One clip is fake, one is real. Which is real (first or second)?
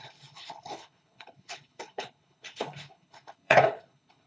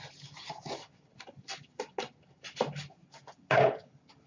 second